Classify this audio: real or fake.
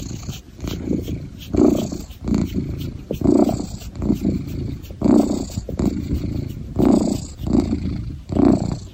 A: real